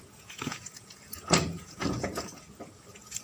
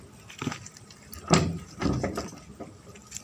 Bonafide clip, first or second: second